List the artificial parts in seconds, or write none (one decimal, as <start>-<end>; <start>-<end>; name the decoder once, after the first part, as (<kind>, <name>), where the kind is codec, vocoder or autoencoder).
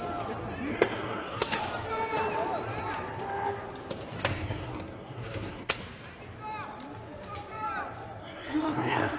0.7-1.4 (codec, SNAC); 4.3-5.8; 8.2-9.2